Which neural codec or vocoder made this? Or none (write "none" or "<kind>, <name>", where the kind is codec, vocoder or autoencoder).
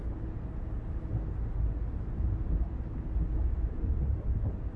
none